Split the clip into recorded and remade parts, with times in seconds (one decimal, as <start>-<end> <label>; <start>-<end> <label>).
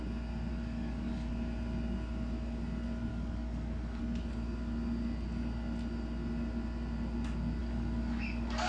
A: 0.0-0.5 recorded; 0.5-1.3 remade; 1.3-3.1 recorded; 3.1-4.0 remade; 4.0-7.6 recorded; 7.6-8.7 remade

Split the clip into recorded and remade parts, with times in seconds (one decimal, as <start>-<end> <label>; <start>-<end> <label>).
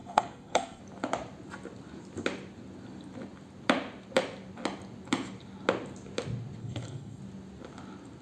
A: 0.0-0.8 remade; 0.8-6.6 recorded; 6.6-7.2 remade; 7.2-8.2 recorded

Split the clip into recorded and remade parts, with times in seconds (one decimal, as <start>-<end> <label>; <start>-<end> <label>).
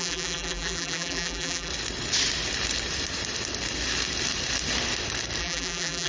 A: 0.0-1.7 remade; 1.7-5.4 recorded; 5.4-6.1 remade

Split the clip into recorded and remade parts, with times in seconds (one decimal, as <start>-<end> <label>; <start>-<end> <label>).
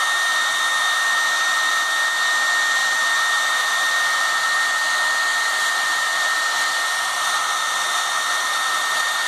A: 0.0-2.8 recorded; 2.8-4.4 remade; 4.4-5.3 recorded; 5.3-6.7 remade; 6.7-9.3 recorded